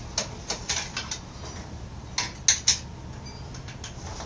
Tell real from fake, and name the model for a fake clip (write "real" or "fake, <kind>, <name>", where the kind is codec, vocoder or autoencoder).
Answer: real